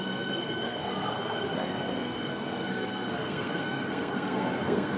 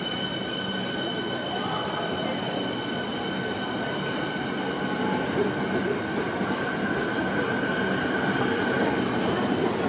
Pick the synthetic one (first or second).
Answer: first